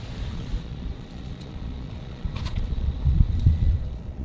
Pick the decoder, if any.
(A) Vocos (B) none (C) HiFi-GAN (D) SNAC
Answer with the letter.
A